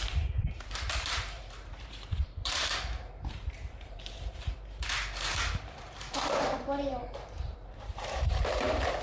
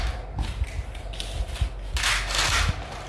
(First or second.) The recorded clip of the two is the second